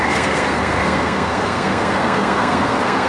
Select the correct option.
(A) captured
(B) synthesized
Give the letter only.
B